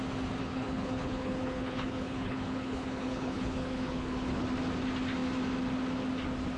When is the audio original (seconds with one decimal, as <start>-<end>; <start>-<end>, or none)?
0.0-0.4; 4.4-6.6